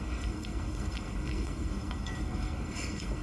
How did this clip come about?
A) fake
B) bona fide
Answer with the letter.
A